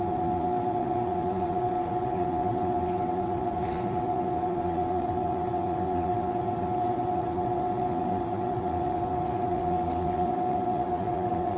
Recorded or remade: remade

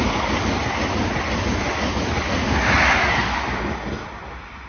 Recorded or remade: recorded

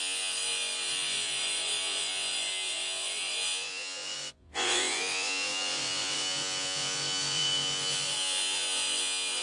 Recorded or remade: remade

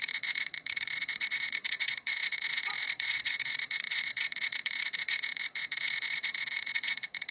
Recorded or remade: remade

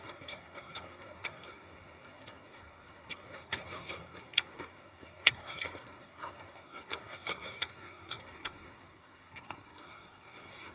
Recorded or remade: remade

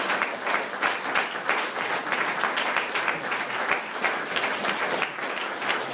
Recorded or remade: recorded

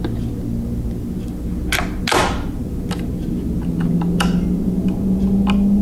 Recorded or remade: recorded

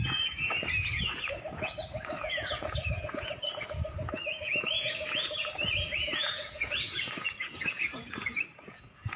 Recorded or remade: remade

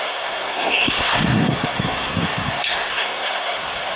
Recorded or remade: remade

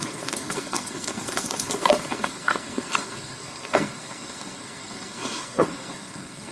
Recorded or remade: remade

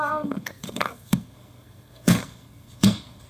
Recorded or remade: remade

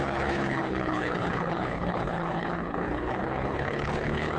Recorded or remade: remade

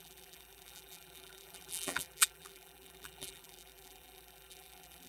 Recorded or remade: remade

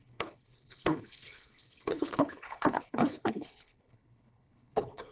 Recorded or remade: remade